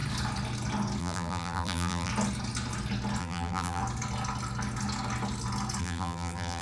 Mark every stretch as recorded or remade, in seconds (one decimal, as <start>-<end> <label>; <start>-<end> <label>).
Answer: 0.0-1.0 recorded; 1.0-2.1 remade; 2.1-3.2 recorded; 3.2-3.8 remade; 3.8-5.8 recorded; 5.8-6.6 remade